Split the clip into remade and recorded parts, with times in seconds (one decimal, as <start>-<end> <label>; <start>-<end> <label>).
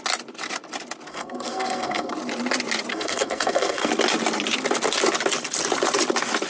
0.0-1.1 recorded; 1.1-2.1 remade; 2.1-2.9 recorded; 2.9-3.9 remade; 3.9-6.5 recorded